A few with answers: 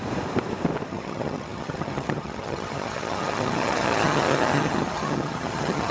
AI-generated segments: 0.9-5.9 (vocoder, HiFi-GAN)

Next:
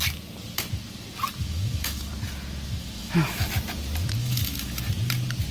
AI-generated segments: 1.4-2.1 (autoencoder, DAC-VAE); 2.8-3.5; 4.2-4.8

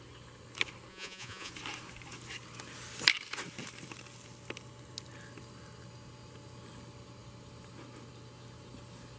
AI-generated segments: 0.9-1.5 (vocoder, Vocos)

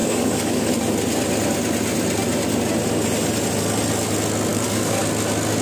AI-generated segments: 0.0-0.7 (codec, DAC); 4.5-5.0

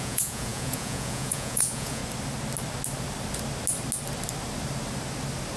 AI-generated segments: 0.0-2.0 (vocoder, Vocos)